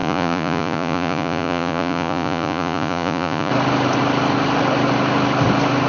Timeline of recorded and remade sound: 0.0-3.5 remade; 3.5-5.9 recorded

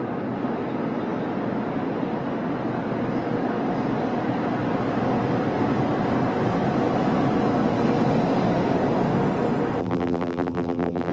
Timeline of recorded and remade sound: 0.0-9.8 recorded; 9.8-11.1 remade

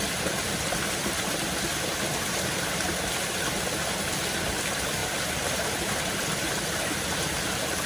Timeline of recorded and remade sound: 0.0-7.9 recorded

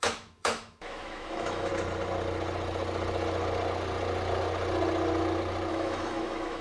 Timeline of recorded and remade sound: 0.0-1.7 remade; 1.7-5.7 recorded; 5.7-6.6 remade

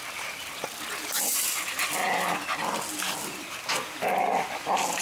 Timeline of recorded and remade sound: 0.0-5.0 recorded